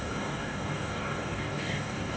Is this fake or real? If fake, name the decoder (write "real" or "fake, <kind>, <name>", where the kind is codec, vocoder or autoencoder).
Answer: fake, codec, DAC